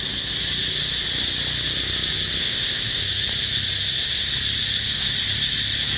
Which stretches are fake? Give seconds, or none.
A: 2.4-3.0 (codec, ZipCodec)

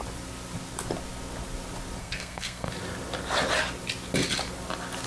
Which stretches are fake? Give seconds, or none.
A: 2.0-2.7 (codec, SNAC)

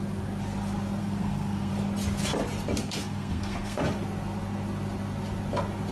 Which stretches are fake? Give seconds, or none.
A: 1.0-1.7 (codec, SNAC); 2.8-3.8